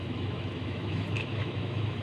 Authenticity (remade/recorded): remade